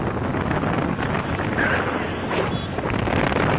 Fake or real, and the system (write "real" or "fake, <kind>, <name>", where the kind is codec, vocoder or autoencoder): real